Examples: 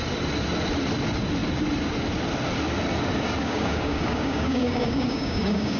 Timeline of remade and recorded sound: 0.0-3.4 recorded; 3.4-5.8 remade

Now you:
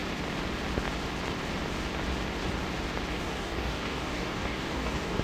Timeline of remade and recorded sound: 0.0-3.1 recorded; 3.1-5.2 remade

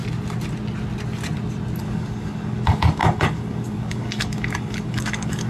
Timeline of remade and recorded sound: 0.0-1.8 recorded; 1.8-5.5 remade

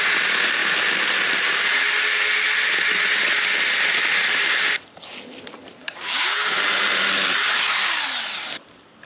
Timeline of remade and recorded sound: 0.0-5.8 recorded; 5.8-6.6 remade; 6.6-9.1 recorded

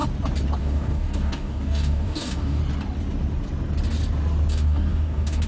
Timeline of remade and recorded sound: 0.0-0.6 recorded; 0.6-2.6 remade; 2.6-4.5 recorded; 4.5-5.5 remade

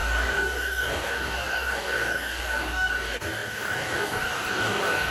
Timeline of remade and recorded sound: 0.0-5.1 remade